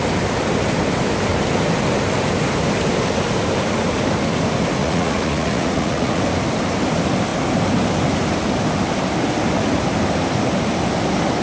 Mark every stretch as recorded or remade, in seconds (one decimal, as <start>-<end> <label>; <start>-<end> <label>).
0.0-4.8 recorded; 4.8-6.2 remade; 6.2-11.4 recorded